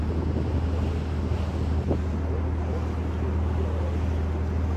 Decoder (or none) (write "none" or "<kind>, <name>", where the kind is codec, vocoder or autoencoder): none